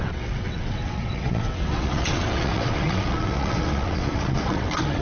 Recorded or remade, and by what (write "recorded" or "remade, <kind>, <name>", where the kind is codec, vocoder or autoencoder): remade, vocoder, WaveNeXt